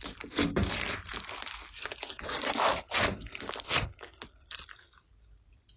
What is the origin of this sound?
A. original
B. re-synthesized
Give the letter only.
A